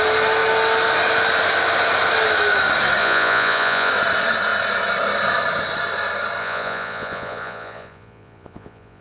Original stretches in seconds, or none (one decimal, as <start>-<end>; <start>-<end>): 0.0-3.0; 3.9-6.4